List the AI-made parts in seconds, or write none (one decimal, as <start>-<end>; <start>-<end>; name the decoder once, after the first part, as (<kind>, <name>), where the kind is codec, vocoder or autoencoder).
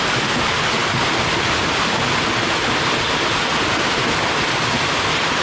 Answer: none